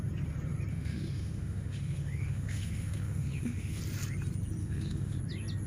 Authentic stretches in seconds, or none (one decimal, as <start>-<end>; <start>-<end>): 0.0-0.7; 3.8-4.6; 5.2-5.7